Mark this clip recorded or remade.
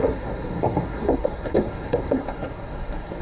remade